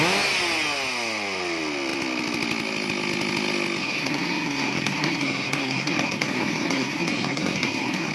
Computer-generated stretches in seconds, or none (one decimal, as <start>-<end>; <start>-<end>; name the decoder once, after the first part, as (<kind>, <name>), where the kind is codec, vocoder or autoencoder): 3.8-8.1 (codec, SNAC)